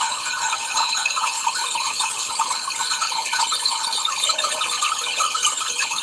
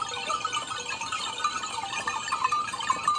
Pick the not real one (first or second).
first